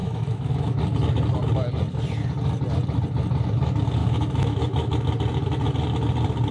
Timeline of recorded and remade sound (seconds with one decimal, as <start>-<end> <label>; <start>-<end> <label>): 0.0-0.8 remade; 0.8-4.0 recorded; 4.0-5.1 remade; 5.1-6.5 recorded